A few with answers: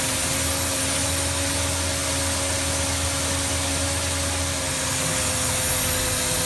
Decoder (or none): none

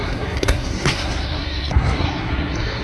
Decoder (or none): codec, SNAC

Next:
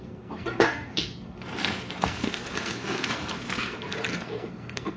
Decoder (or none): codec, SNAC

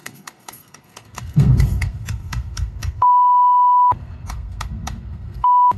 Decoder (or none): codec, SNAC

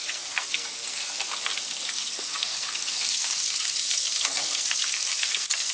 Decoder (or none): codec, SNAC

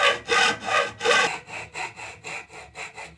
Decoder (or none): none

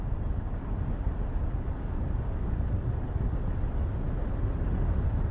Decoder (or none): none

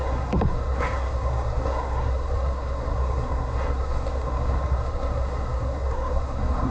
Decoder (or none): codec, SNAC